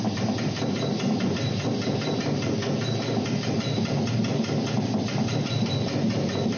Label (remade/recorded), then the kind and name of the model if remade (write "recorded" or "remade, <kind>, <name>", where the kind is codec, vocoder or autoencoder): recorded